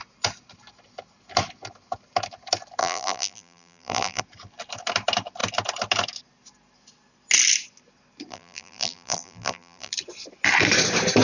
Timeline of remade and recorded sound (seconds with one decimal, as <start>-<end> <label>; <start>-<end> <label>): 0.0-2.8 recorded; 2.8-4.2 remade; 4.2-8.3 recorded; 8.3-9.9 remade; 9.9-11.2 recorded